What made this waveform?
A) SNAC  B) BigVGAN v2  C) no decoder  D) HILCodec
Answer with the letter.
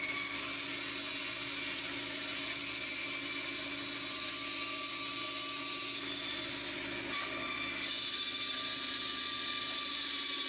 C